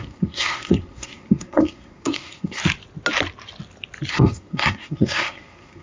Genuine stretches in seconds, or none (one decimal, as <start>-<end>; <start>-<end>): 2.6-4.1